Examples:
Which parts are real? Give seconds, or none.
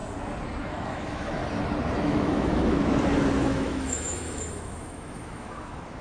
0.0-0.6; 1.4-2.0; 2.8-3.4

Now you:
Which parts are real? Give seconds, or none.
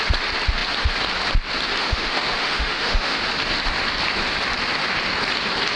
0.0-1.8; 3.2-5.8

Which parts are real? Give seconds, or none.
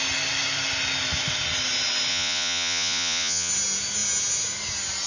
0.0-2.1; 3.5-5.1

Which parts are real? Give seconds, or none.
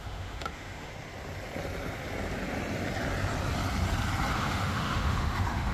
0.9-4.3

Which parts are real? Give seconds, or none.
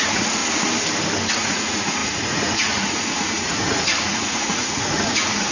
0.4-1.3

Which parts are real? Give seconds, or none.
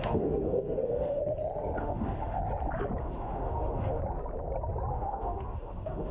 1.2-1.8; 2.4-3.0; 4.0-4.9